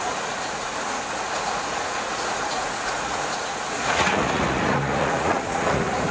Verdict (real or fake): fake